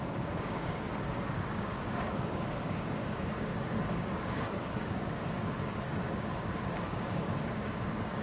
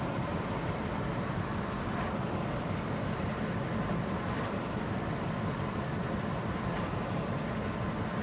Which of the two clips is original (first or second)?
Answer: second